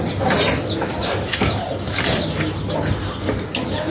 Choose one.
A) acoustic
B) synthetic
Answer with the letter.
A